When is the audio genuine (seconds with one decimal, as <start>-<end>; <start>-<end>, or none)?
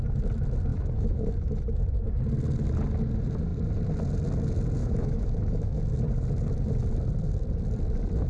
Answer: 0.0-0.7; 1.6-4.8; 5.8-8.3